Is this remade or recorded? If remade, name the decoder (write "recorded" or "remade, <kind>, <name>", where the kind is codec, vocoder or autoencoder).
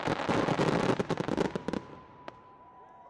recorded